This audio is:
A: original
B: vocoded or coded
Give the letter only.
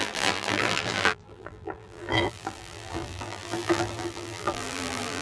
B